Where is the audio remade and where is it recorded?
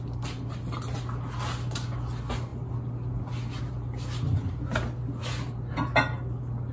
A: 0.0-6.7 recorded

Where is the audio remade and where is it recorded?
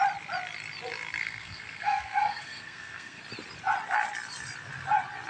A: 0.0-1.2 recorded; 1.2-3.2 remade; 3.2-5.3 recorded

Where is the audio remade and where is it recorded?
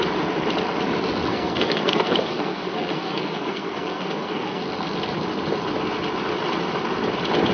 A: 0.0-1.3 recorded; 1.3-4.6 remade; 4.6-7.5 recorded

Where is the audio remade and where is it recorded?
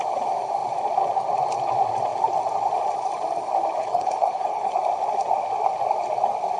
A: 0.0-3.8 recorded; 3.8-4.7 remade; 4.7-6.6 recorded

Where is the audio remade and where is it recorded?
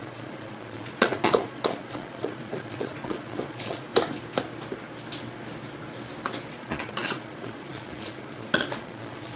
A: 0.0-3.9 remade; 3.9-6.5 recorded; 6.5-9.4 remade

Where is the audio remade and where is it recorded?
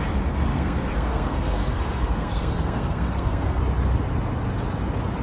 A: 0.0-0.5 recorded; 0.5-3.6 remade; 3.6-5.2 recorded